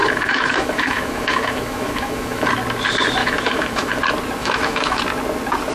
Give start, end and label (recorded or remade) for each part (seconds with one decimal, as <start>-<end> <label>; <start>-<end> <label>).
0.0-2.5 remade; 2.5-3.2 recorded; 3.2-4.0 remade; 4.0-4.4 recorded; 4.4-5.0 remade; 5.0-5.7 recorded